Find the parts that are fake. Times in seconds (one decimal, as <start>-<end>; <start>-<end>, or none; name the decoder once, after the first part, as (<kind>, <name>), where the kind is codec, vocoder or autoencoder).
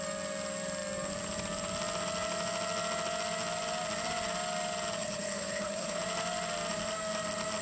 5.0-6.0 (codec, HILCodec)